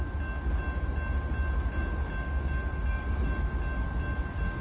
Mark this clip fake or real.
real